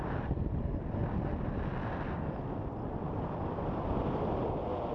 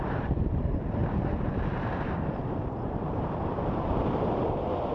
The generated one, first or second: second